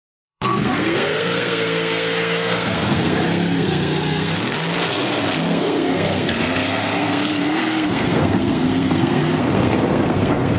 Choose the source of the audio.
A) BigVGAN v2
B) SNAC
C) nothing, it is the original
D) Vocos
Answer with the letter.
B